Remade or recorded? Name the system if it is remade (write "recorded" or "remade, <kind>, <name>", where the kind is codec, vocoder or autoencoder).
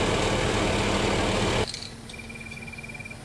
recorded